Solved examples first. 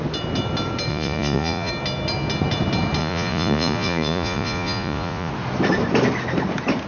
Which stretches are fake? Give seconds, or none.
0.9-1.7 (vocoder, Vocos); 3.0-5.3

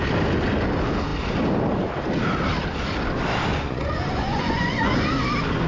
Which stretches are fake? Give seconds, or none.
3.5-4.9 (vocoder, Vocos)

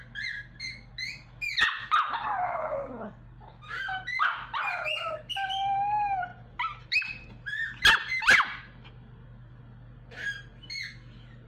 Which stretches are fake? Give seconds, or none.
none

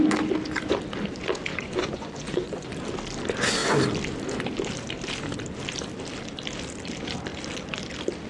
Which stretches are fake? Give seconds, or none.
1.5-2.7 (vocoder, Vocos)

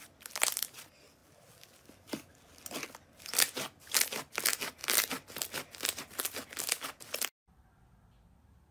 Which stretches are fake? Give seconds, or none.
none

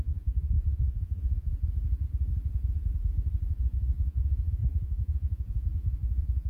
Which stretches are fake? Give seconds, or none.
0.0-1.5 (vocoder, Vocos); 3.6-6.5

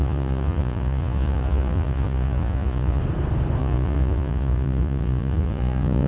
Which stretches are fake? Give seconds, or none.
0.0-3.0 (vocoder, Vocos); 3.6-6.1

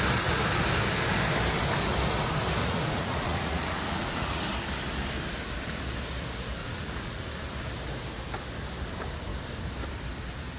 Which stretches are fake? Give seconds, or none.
2.6-4.4 (vocoder, Vocos); 6.6-7.3